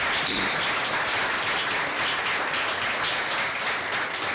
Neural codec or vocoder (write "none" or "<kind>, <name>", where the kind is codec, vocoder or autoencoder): none